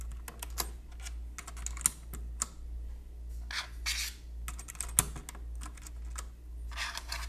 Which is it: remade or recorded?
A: recorded